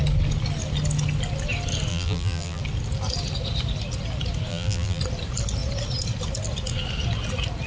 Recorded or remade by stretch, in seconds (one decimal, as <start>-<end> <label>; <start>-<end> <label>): 0.0-1.9 recorded; 1.9-2.6 remade; 2.6-4.5 recorded; 4.5-5.0 remade; 5.0-7.7 recorded